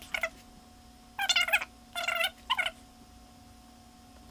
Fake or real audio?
real